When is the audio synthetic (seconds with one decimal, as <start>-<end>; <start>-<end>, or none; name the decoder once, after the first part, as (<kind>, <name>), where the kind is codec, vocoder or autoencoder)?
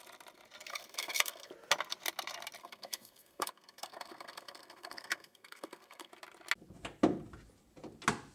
0.7-1.5 (codec, SNAC); 2.6-6.1